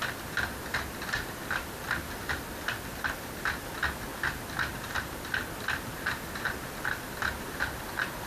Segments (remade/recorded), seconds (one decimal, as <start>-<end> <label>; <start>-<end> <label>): 0.0-8.3 recorded